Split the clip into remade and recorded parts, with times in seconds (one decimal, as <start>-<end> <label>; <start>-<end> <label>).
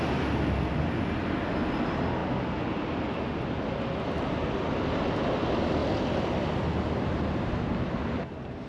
0.0-8.7 recorded